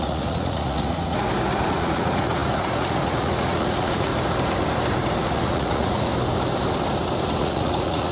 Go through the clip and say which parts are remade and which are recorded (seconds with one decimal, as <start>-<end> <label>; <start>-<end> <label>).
0.0-1.0 remade; 1.0-1.7 recorded; 1.7-4.1 remade; 4.1-5.2 recorded; 5.2-6.1 remade; 6.1-7.4 recorded; 7.4-8.1 remade